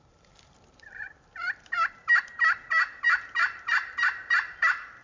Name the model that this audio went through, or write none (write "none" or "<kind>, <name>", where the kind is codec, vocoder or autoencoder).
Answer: vocoder, BigVGAN v2